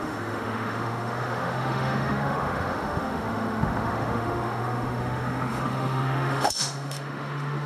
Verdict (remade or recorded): remade